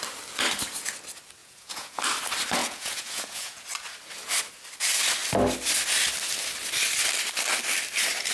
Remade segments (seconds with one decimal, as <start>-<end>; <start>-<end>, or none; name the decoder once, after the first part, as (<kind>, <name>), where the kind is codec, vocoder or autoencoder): 1.4-2.0 (vocoder, Vocos); 2.6-3.6